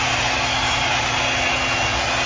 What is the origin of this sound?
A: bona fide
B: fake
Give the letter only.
A